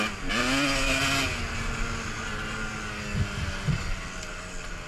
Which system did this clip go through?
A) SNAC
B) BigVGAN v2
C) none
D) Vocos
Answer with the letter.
C